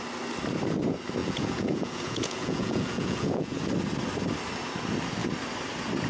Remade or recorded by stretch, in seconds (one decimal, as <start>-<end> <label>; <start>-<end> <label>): 0.0-1.2 recorded; 1.2-3.6 remade; 3.6-6.1 recorded